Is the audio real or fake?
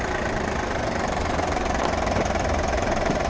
fake